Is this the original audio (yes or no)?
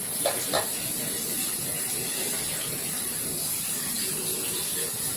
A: yes